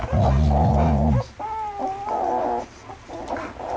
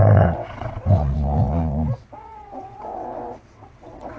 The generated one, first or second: second